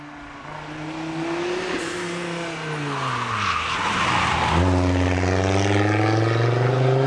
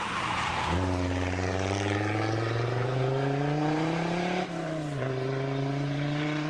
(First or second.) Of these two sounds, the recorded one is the first